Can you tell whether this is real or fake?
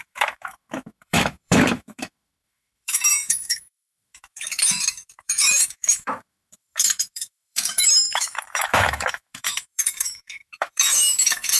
fake